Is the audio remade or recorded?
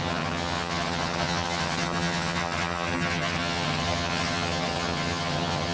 remade